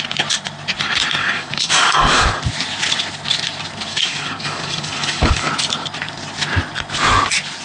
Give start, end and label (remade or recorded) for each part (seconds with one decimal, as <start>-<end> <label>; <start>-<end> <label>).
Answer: 0.0-1.2 recorded; 1.2-2.4 remade; 2.4-3.9 recorded; 3.9-5.5 remade; 5.5-7.6 recorded